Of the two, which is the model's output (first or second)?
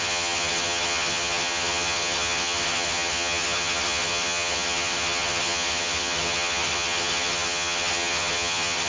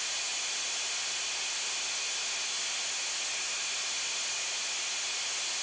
first